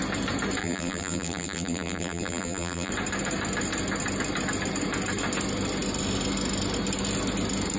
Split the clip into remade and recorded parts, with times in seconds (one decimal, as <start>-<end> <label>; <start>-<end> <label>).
0.0-0.6 recorded; 0.6-2.9 remade; 2.9-7.8 recorded